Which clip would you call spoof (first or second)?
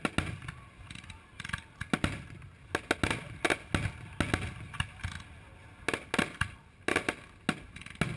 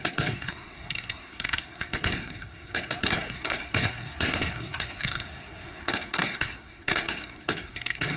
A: second